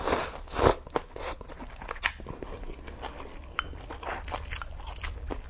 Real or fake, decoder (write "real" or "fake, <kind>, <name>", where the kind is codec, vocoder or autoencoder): real